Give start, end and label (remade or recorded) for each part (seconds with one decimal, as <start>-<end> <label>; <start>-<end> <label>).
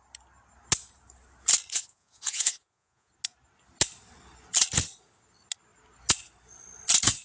0.0-1.7 recorded; 1.7-3.1 remade; 3.1-7.2 recorded